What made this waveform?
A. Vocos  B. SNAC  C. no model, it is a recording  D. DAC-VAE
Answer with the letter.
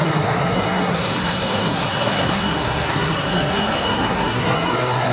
B